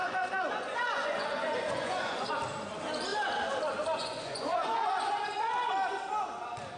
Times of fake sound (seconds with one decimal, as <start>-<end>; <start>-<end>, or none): 0.0-2.3; 4.0-5.1